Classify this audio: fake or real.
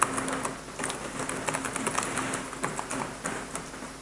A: real